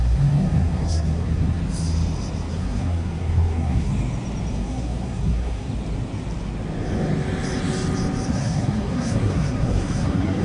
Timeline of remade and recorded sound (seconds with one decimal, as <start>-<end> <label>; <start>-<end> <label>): 0.0-1.6 remade; 1.6-2.5 recorded; 2.5-3.9 remade; 3.9-4.5 recorded; 4.5-5.7 remade; 5.7-8.3 recorded; 8.3-10.4 remade